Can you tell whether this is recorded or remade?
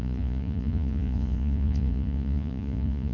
remade